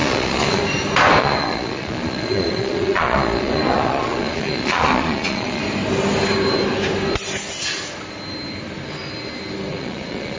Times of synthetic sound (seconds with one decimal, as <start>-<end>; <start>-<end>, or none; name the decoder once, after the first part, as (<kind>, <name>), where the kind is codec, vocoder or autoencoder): 0.0-0.6 (vocoder, Vocos); 1.2-5.6; 9.7-10.4